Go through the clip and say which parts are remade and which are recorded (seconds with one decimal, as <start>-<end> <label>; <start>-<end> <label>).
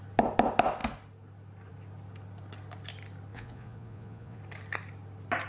0.0-3.3 recorded; 3.3-4.4 remade; 4.4-5.5 recorded